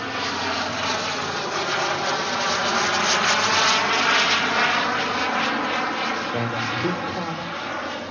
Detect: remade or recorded recorded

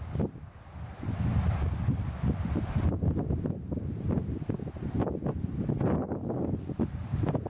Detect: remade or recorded recorded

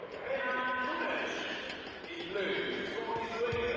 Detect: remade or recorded recorded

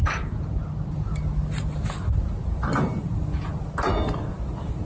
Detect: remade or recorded recorded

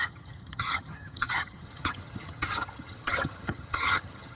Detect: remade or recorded remade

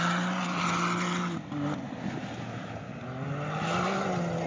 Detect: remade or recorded recorded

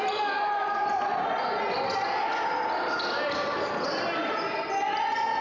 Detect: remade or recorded recorded